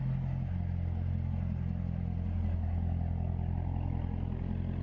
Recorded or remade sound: recorded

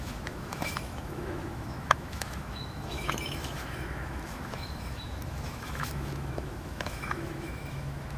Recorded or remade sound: remade